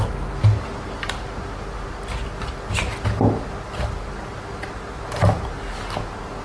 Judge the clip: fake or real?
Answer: real